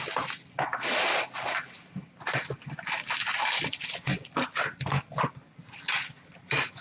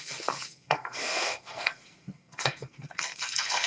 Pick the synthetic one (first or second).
second